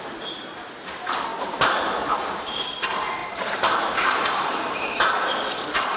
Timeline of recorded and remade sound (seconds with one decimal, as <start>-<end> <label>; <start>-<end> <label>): 0.0-3.2 remade; 3.2-3.9 recorded; 3.9-6.0 remade